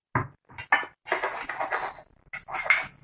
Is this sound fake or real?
real